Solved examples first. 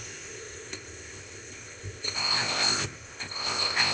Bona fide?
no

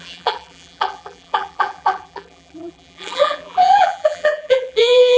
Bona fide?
no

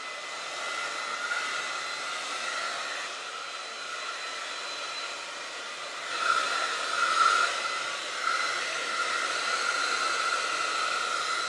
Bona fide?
yes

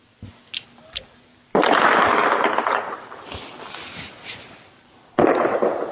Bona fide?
no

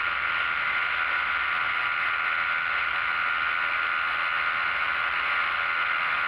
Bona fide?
yes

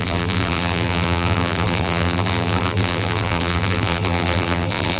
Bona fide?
no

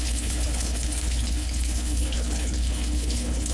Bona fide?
no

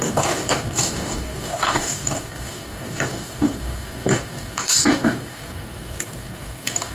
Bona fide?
no